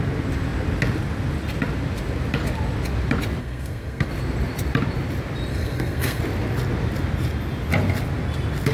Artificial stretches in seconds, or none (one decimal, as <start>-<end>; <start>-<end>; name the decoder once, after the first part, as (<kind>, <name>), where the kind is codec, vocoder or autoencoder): 3.4-4.1 (codec, SNAC); 5.5-6.2